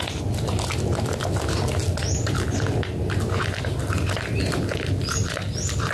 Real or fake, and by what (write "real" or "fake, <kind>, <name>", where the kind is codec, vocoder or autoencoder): real